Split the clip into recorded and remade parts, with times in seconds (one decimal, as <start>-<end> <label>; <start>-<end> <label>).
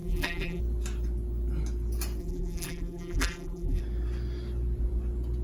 0.0-0.6 remade; 0.6-2.2 recorded; 2.2-3.8 remade; 3.8-5.4 recorded